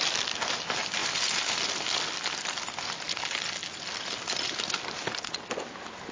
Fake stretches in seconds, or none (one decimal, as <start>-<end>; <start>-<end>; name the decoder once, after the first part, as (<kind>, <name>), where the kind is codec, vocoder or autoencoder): none